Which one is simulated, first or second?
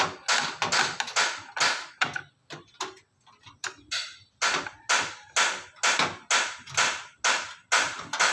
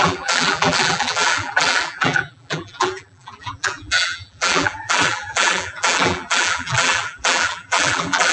second